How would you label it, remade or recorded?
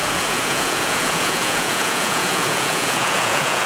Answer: remade